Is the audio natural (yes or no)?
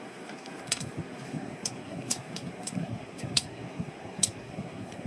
no